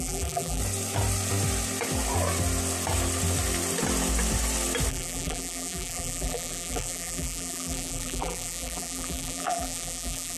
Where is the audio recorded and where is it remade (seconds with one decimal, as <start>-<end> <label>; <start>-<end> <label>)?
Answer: 0.0-0.6 remade; 0.6-4.9 recorded; 4.9-10.4 remade